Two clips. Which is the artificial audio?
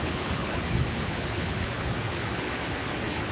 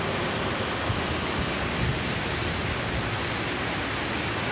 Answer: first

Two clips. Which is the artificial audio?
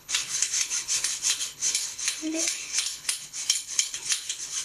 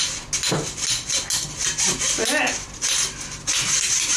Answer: first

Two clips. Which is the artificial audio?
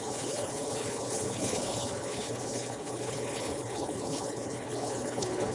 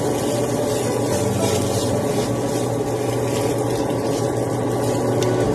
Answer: first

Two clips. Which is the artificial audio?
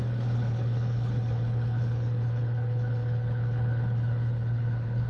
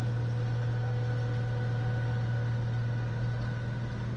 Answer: first